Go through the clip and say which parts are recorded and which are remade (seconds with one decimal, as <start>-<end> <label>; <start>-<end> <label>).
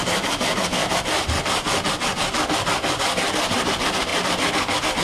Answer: 0.0-5.0 recorded